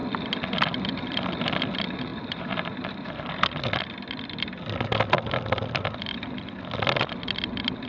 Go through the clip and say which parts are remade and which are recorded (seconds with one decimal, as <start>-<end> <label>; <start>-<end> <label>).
0.0-2.1 recorded; 2.1-3.3 remade; 3.3-7.9 recorded